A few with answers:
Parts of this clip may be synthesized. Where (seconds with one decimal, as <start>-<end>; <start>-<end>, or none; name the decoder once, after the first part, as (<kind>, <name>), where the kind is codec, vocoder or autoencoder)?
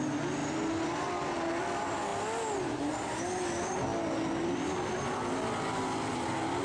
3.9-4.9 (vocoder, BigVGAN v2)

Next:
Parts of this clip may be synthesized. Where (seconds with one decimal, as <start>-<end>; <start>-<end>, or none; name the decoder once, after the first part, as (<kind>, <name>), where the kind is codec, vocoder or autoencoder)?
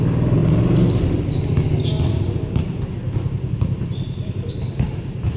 0.4-1.0 (vocoder, BigVGAN v2); 3.0-5.4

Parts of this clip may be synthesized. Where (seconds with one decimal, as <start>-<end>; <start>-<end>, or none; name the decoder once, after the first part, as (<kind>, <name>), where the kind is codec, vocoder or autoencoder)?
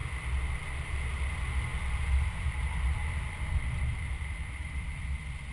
1.7-5.0 (vocoder, BigVGAN v2)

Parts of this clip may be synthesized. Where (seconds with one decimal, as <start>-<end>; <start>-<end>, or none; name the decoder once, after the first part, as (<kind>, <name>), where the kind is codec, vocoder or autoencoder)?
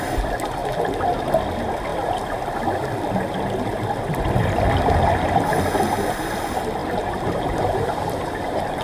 6.8-8.8 (vocoder, BigVGAN v2)